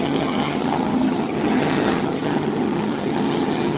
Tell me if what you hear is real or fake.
fake